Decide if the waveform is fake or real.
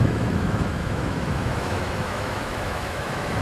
fake